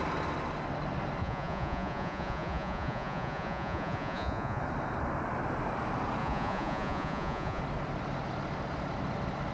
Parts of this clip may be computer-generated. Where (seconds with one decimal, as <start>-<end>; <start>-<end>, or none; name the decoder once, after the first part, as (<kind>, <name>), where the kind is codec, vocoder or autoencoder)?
1.2-4.6 (vocoder, Vocos); 6.2-7.6